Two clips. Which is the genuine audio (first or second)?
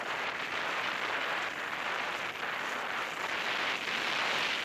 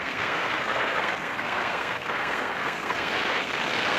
first